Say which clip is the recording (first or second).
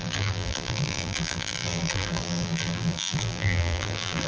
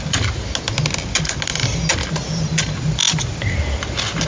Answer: second